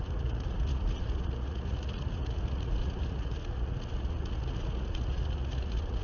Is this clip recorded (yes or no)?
no